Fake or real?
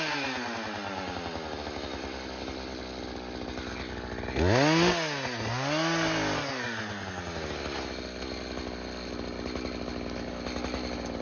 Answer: real